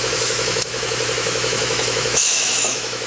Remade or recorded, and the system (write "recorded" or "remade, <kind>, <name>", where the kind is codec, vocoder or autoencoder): remade, autoencoder, DAC-VAE